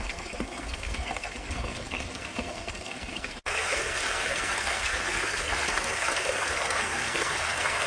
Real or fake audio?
fake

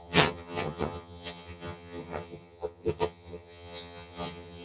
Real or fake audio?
fake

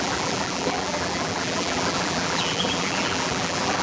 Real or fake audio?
fake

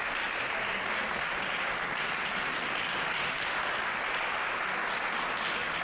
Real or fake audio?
real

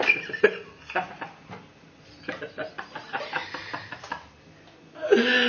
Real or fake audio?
real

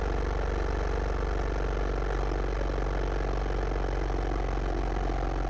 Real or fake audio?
real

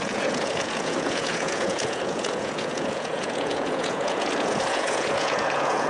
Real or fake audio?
fake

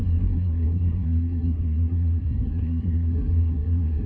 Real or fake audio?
fake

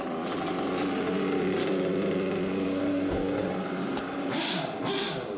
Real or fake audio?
real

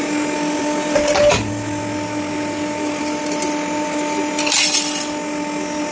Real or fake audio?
real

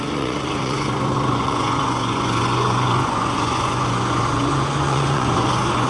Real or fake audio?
fake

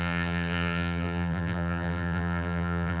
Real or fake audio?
fake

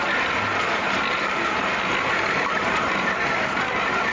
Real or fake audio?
real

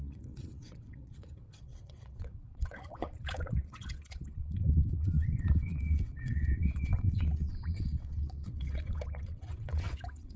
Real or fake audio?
fake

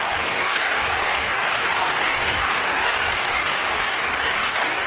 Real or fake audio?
fake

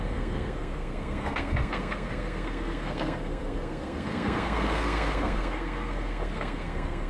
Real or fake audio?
fake